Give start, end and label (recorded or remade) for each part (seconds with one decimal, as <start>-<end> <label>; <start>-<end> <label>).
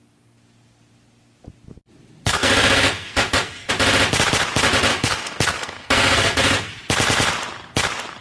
0.0-2.2 recorded; 2.2-3.7 remade; 3.7-4.9 recorded; 4.9-6.7 remade; 6.7-8.2 recorded